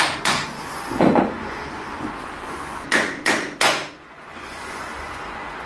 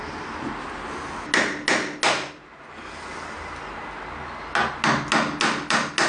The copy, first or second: first